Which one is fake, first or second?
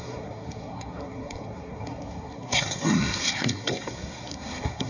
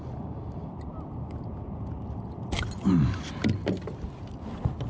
first